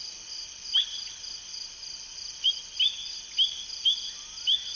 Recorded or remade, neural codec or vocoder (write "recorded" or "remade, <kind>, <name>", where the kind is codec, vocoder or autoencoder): recorded